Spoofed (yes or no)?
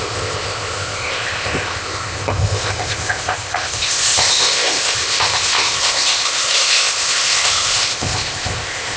yes